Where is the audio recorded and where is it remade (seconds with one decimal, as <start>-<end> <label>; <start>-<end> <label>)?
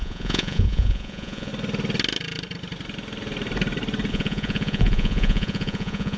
0.0-1.5 remade; 1.5-4.1 recorded; 4.1-6.2 remade